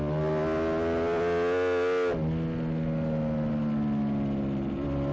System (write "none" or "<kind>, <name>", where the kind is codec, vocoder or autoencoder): none